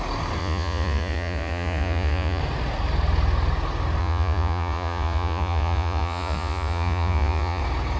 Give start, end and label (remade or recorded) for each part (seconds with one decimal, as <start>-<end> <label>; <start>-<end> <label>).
0.0-0.4 recorded; 0.4-2.4 remade; 2.4-4.0 recorded; 4.0-7.6 remade; 7.6-8.0 recorded